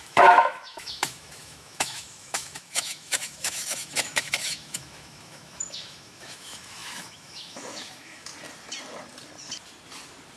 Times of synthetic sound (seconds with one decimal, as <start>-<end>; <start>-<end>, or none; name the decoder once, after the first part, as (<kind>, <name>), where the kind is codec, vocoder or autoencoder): 0.0-8.3 (autoencoder, DAC-VAE)